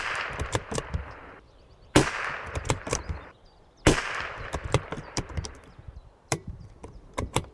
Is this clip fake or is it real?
fake